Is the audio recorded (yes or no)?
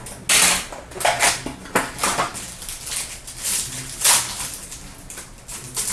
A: yes